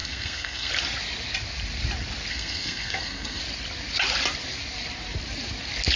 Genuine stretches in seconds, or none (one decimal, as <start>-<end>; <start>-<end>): 0.7-2.3; 3.4-6.0